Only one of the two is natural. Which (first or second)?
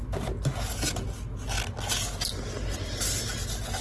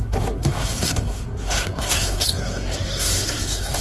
first